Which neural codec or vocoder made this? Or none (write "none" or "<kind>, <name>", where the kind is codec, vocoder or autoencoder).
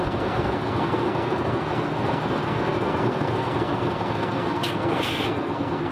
codec, SNAC